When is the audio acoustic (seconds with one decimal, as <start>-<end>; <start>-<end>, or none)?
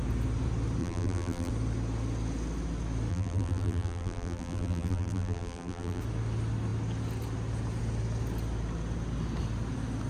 0.0-0.8; 1.5-3.1; 6.0-10.1